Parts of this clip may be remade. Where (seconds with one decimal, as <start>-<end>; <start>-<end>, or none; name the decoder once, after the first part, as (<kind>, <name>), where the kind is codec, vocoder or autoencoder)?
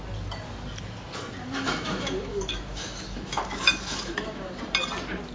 1.4-4.6 (autoencoder, DAC-VAE)